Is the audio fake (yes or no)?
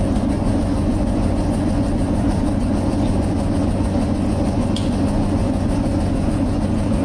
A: yes